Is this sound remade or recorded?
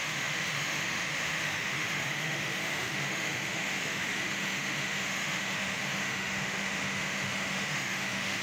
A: remade